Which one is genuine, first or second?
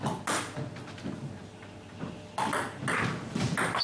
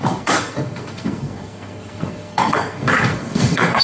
first